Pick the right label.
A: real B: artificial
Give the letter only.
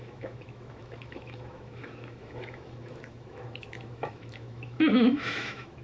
B